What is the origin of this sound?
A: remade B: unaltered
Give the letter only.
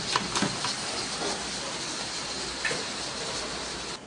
B